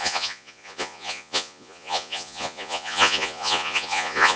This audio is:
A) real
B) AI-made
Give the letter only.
B